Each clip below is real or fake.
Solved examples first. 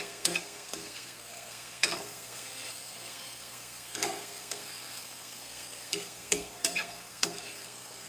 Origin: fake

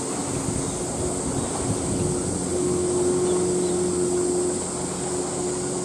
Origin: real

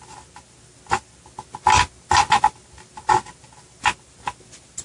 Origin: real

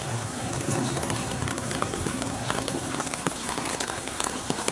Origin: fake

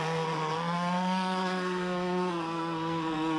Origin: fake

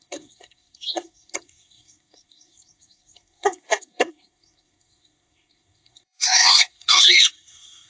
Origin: fake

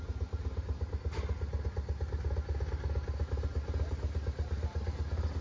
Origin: real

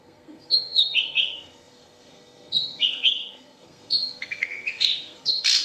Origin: fake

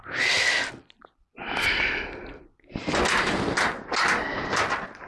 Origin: real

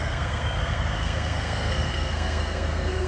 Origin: fake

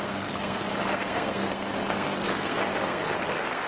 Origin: fake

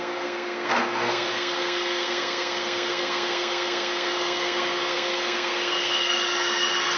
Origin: fake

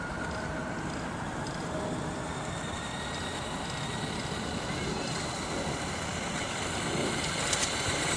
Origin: real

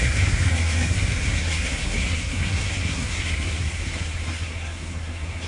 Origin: fake